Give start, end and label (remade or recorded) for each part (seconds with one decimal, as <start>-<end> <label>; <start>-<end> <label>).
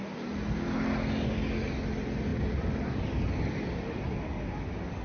0.0-5.0 recorded